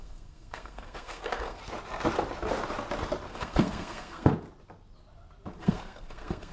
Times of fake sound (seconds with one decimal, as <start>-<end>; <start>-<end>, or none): 0.0-1.6; 3.3-4.3; 5.6-6.5